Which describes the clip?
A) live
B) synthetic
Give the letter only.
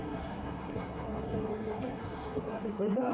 B